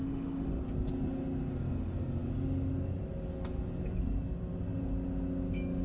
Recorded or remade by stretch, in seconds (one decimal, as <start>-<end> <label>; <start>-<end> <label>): 0.0-0.6 remade; 0.6-5.8 recorded